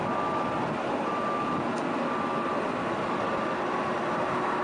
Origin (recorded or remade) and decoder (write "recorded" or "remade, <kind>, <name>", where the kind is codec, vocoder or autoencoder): recorded